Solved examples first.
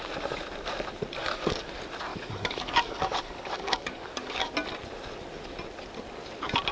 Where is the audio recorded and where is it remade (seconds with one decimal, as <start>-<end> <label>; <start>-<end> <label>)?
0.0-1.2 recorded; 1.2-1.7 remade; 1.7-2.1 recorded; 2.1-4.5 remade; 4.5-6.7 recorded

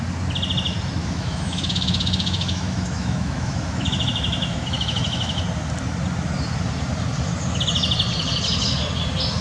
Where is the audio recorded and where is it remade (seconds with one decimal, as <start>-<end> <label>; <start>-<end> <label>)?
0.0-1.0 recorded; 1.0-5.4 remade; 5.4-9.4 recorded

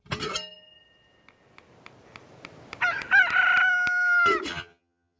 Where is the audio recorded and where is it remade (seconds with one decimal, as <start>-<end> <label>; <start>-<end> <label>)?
0.0-4.5 recorded; 4.5-5.2 remade

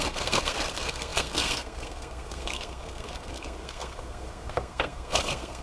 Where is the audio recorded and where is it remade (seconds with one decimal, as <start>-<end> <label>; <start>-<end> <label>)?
0.0-5.6 remade

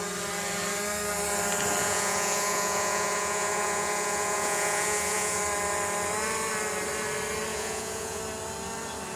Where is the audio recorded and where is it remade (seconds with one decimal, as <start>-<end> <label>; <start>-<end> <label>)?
0.0-1.8 recorded; 1.8-5.4 remade; 5.4-7.5 recorded; 7.5-8.2 remade; 8.2-9.2 recorded

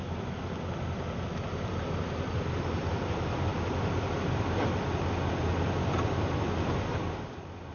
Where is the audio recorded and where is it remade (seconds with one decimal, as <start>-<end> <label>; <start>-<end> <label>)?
0.0-7.7 recorded